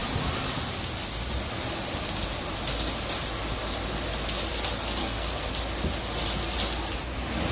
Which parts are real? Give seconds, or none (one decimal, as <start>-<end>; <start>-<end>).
0.0-5.0; 5.5-7.5

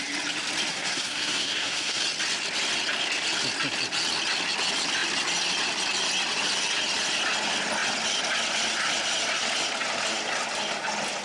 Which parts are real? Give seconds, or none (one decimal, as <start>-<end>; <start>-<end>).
0.0-0.7; 2.0-11.2

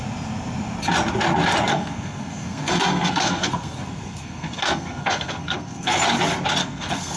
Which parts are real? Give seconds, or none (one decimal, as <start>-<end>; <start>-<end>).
0.0-1.7; 6.0-6.6